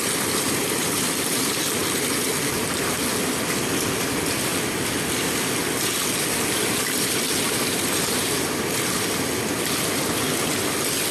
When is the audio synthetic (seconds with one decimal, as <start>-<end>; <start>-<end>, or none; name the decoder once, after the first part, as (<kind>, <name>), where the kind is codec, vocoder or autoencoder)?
none